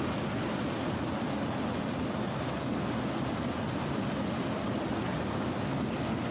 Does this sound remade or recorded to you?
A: recorded